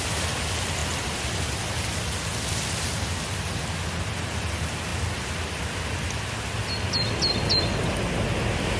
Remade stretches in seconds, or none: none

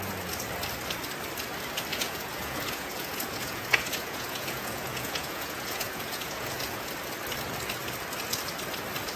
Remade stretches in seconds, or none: 1.9-6.9 (vocoder, Vocos)

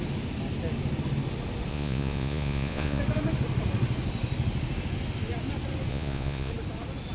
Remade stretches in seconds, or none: 1.7-3.0 (vocoder, Vocos); 5.9-6.5

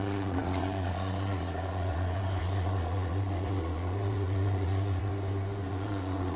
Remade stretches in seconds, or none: 0.0-5.1 (vocoder, Vocos); 5.7-6.4

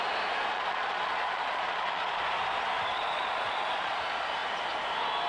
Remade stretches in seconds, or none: 0.5-2.2 (vocoder, Vocos); 2.9-4.0

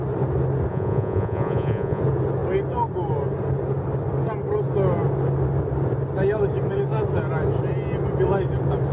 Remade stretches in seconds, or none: 0.7-2.0 (vocoder, Vocos)